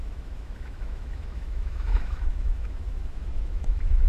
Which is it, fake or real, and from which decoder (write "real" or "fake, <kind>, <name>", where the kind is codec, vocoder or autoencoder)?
fake, autoencoder, DAC-VAE